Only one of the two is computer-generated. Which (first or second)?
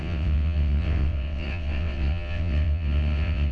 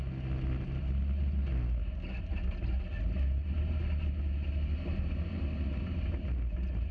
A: first